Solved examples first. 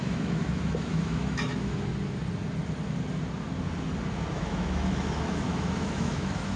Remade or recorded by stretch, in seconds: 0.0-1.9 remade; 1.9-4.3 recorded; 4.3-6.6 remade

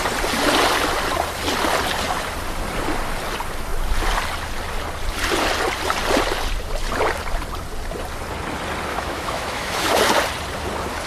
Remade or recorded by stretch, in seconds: 0.0-8.9 recorded; 8.9-10.0 remade; 10.0-11.1 recorded

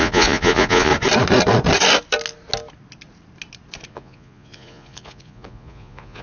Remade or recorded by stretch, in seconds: 0.0-0.9 remade; 0.9-3.9 recorded; 3.9-6.2 remade

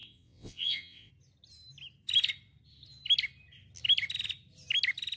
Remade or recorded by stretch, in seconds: 0.0-1.1 remade; 1.1-5.2 recorded

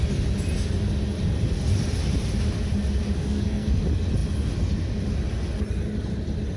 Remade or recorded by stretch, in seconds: 0.0-3.2 recorded; 3.2-3.8 remade; 3.8-6.6 recorded

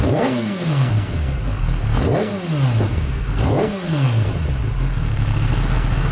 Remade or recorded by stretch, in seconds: 0.0-2.3 remade; 2.3-2.9 recorded; 2.9-4.3 remade; 4.3-4.9 recorded; 4.9-6.1 remade